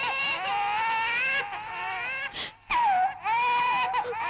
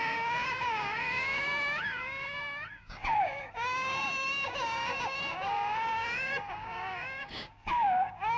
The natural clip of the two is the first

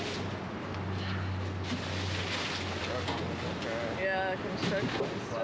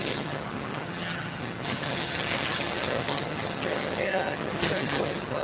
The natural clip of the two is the first